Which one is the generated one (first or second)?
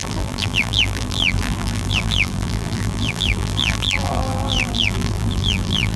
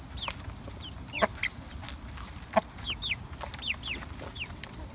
first